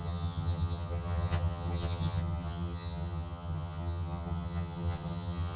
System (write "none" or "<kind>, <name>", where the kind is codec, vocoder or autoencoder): vocoder, HiFi-GAN